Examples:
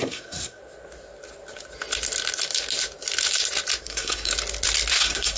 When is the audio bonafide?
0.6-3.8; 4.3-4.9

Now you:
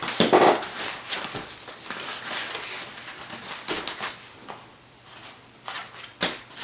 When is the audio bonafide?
0.0-6.6

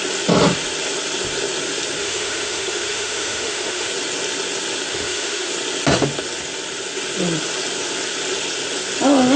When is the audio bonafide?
0.0-2.0; 3.9-4.9; 5.5-9.4

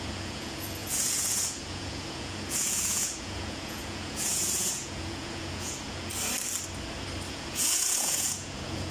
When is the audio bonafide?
6.1-7.3

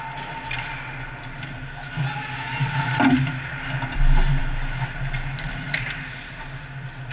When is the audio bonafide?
0.0-7.1

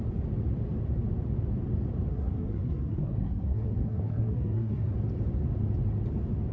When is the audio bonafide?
0.0-2.1; 4.9-6.5

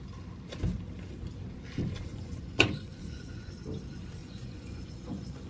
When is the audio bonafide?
0.0-2.1; 3.5-4.2